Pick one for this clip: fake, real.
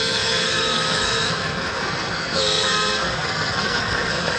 fake